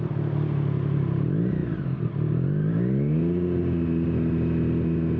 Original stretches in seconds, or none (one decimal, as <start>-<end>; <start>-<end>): 0.0-5.2